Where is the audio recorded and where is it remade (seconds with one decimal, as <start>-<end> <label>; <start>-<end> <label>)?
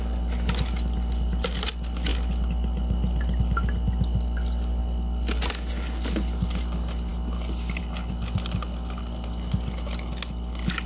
0.0-10.9 recorded